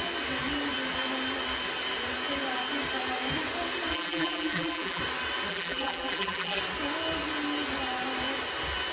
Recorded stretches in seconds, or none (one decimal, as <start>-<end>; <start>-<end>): 0.0-3.9; 5.0-5.5; 6.6-8.9